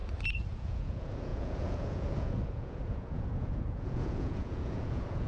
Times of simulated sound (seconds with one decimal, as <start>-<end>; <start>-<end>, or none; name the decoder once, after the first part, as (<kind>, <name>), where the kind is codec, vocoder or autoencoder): 0.5-5.3 (vocoder, Vocos)